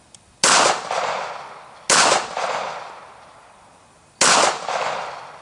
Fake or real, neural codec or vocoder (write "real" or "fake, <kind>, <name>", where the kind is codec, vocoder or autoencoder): real